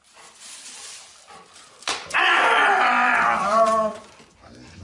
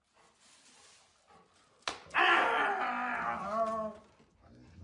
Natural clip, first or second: second